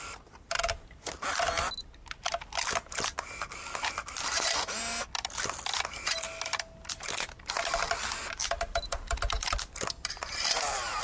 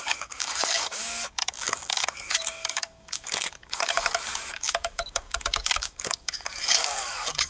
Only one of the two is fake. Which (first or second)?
second